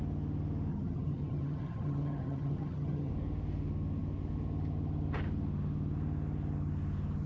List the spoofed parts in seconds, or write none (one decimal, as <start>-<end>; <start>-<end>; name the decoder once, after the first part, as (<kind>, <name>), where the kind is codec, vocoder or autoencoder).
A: 0.7-3.1 (vocoder, HiFi-GAN)